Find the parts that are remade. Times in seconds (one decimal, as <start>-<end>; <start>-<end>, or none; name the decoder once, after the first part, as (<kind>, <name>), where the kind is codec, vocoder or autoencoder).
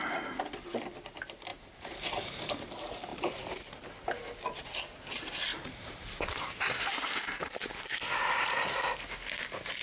1.5-2.5 (vocoder, BigVGAN v2); 3.1-3.7; 5.5-8.0